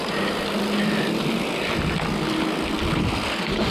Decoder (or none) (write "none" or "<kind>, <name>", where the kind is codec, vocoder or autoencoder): none